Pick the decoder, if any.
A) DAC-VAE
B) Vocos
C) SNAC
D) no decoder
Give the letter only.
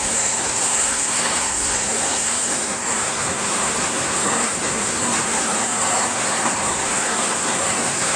C